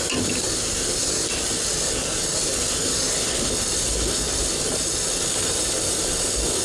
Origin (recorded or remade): recorded